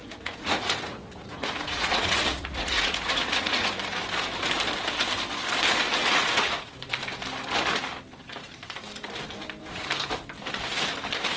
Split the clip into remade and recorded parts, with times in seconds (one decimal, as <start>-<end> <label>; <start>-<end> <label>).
0.0-3.7 remade; 3.7-6.0 recorded; 6.0-6.9 remade; 6.9-11.4 recorded